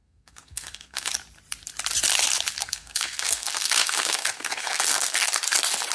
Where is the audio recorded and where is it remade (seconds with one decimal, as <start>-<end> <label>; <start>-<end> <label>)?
0.0-1.1 remade; 1.1-2.6 recorded; 2.6-5.3 remade; 5.3-5.9 recorded